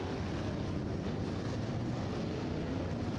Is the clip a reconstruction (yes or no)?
no